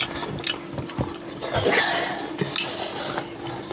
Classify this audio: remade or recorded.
recorded